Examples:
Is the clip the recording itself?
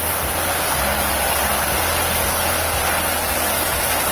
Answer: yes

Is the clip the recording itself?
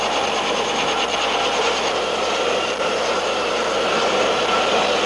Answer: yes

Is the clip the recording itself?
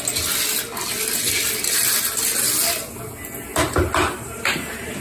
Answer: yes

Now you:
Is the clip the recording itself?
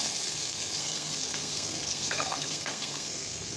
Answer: no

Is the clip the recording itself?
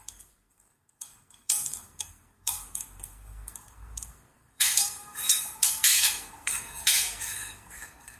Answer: no